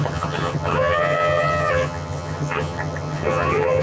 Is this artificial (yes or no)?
yes